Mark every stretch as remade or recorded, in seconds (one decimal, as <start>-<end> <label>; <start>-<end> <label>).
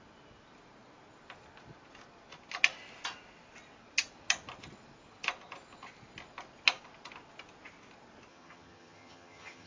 0.0-8.3 recorded; 8.3-9.7 remade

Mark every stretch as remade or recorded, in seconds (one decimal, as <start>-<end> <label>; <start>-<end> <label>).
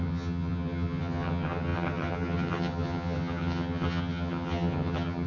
0.0-5.3 remade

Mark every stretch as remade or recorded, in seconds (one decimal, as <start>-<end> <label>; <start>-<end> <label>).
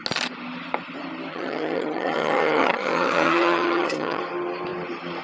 0.0-1.3 recorded; 1.3-4.2 remade; 4.2-5.2 recorded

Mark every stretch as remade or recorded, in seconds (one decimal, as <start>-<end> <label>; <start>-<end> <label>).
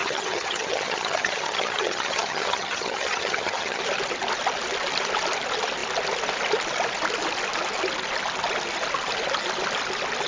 0.0-3.8 remade; 3.8-10.3 recorded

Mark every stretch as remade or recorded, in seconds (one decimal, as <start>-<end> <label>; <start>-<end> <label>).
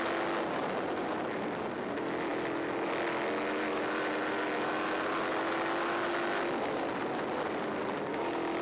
0.0-8.6 recorded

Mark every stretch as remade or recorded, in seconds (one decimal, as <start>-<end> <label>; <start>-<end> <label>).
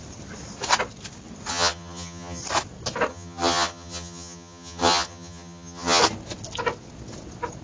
0.0-1.5 recorded; 1.5-2.4 remade; 2.4-3.1 recorded; 3.1-6.0 remade; 6.0-7.6 recorded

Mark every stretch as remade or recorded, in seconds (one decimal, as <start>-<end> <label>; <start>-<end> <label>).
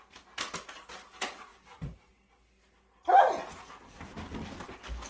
0.0-5.1 recorded